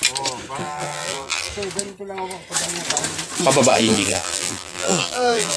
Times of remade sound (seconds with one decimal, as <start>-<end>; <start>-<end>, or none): 0.6-1.5; 3.7-5.6